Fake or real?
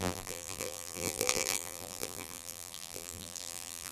fake